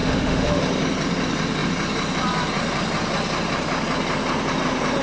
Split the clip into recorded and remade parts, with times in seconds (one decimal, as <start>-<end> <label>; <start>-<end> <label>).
0.0-0.6 remade; 0.6-5.0 recorded